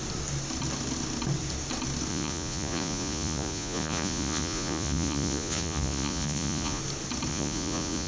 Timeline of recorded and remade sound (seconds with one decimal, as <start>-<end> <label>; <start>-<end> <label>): 0.0-2.1 recorded; 2.1-6.8 remade; 6.8-7.3 recorded; 7.3-8.1 remade